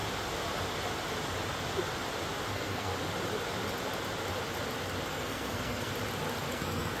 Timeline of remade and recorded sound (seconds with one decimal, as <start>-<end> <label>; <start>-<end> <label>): 0.0-2.5 recorded; 2.5-2.9 remade; 2.9-5.1 recorded; 5.1-5.9 remade; 5.9-6.5 recorded; 6.5-7.0 remade